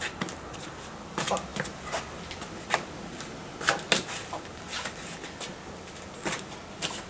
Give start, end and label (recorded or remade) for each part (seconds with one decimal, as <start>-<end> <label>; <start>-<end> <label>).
0.0-7.1 recorded